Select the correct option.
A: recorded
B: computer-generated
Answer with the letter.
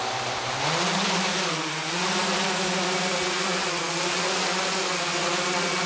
A